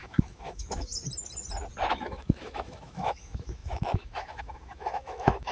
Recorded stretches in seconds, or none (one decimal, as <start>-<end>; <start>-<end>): 0.9-1.9